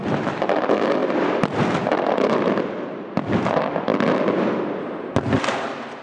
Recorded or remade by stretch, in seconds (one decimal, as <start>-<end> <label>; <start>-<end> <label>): 0.0-6.0 recorded